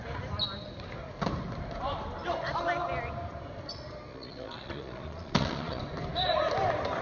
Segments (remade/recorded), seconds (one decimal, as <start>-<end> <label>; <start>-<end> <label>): 0.0-4.1 recorded; 4.1-5.8 remade; 5.8-7.0 recorded